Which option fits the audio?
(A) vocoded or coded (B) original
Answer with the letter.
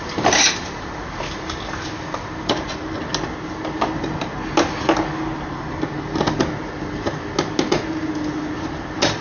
B